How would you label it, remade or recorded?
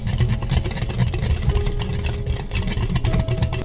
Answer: recorded